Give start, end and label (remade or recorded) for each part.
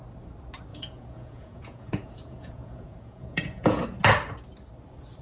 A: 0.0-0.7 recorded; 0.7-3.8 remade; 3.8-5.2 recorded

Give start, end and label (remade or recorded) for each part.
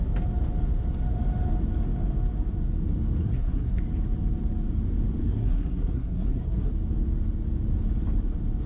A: 0.0-3.2 recorded; 3.2-3.8 remade; 3.8-5.2 recorded; 5.2-6.7 remade; 6.7-8.7 recorded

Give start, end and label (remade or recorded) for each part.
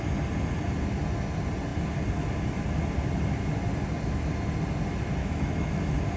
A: 0.0-5.2 recorded; 5.2-5.8 remade; 5.8-6.2 recorded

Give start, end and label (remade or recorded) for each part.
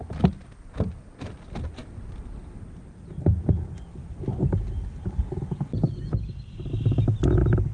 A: 0.0-7.7 recorded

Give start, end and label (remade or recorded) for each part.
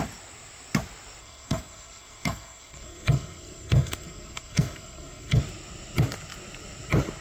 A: 0.0-1.2 recorded; 1.2-5.4 remade; 5.4-7.2 recorded